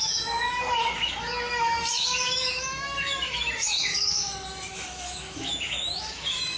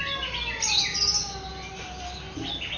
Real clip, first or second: second